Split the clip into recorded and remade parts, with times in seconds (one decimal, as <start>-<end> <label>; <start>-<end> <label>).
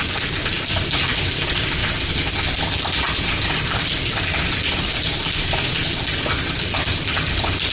0.0-1.8 remade; 1.8-3.1 recorded; 3.1-7.7 remade